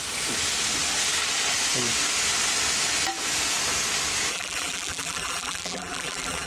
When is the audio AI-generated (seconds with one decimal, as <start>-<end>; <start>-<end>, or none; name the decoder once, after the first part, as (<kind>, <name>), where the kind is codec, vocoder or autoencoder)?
4.3-6.5 (vocoder, BigVGAN v2)